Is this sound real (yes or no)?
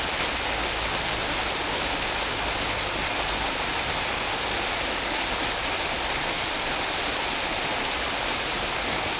yes